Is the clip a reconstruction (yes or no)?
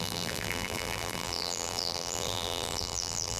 yes